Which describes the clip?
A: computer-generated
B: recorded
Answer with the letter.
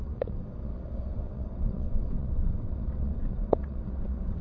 A